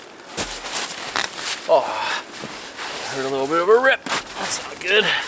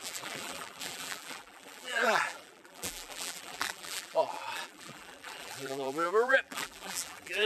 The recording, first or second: first